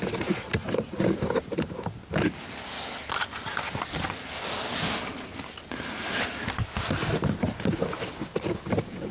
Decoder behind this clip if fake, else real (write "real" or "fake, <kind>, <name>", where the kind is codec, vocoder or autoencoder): real